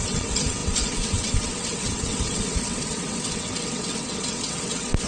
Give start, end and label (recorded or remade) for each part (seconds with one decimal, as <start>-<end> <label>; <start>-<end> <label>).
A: 0.0-5.1 remade